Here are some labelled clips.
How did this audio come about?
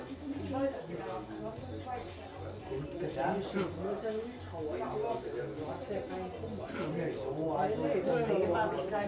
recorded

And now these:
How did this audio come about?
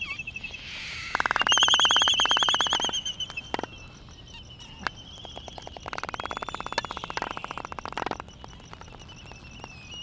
recorded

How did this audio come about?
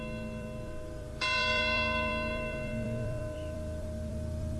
remade